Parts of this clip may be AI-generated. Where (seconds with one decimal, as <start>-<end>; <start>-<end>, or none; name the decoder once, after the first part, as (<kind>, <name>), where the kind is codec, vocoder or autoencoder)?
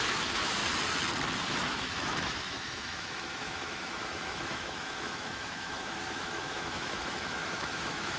0.0-0.6 (autoencoder, DAC-VAE); 1.4-8.2